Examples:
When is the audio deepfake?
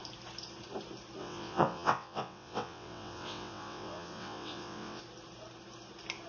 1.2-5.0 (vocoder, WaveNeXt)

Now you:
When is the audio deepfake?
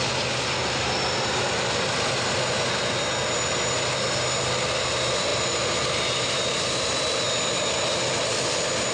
none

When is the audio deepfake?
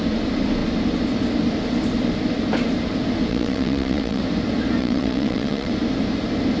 3.3-4.2 (vocoder, WaveNeXt); 4.8-5.7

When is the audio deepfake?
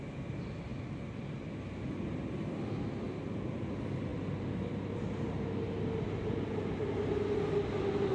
none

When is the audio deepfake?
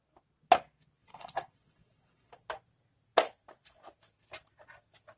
1.0-2.3 (vocoder, WaveNeXt)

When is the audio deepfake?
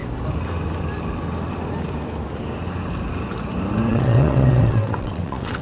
3.9-5.6 (vocoder, WaveNeXt)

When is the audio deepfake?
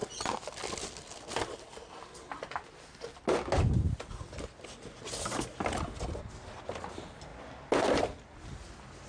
none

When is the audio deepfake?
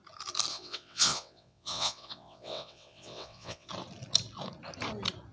0.5-3.7 (vocoder, WaveNeXt)